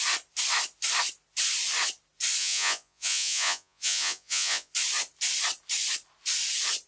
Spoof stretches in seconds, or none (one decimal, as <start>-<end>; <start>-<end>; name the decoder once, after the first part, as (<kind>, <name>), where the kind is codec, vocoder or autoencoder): 2.4-4.7 (vocoder, Vocos)